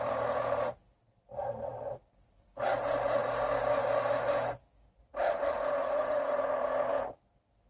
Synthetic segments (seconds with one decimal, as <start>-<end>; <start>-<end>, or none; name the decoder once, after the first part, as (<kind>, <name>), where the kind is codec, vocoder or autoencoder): 5.8-6.3 (vocoder, Vocos)